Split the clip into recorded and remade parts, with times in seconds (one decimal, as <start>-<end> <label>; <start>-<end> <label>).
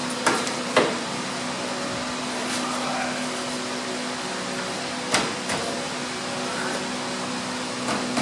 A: 0.0-1.3 remade; 1.3-8.2 recorded